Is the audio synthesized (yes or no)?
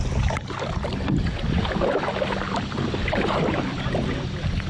no